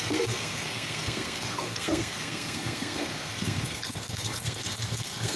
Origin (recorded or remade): remade